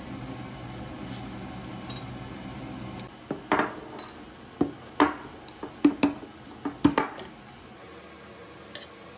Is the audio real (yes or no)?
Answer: yes